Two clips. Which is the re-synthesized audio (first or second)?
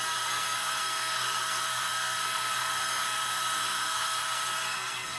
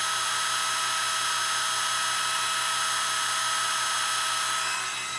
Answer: first